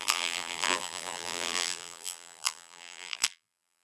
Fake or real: fake